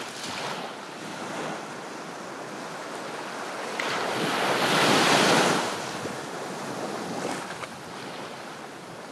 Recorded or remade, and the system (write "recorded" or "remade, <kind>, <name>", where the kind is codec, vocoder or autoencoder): recorded